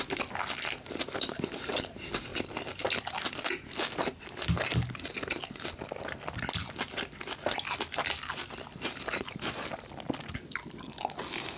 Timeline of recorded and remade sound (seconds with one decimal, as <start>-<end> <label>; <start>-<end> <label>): 0.0-11.6 recorded